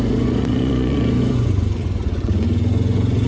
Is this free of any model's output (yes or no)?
no